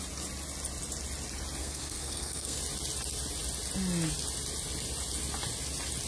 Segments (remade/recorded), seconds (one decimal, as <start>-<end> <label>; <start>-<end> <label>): 0.0-1.6 recorded; 1.6-2.6 remade; 2.6-6.1 recorded